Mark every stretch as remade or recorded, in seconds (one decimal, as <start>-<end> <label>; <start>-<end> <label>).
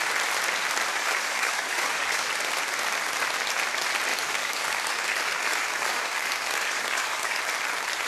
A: 0.0-0.9 recorded; 0.9-2.3 remade; 2.3-4.1 recorded; 4.1-7.4 remade; 7.4-8.1 recorded